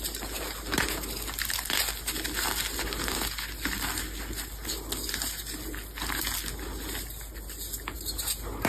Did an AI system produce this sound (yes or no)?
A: no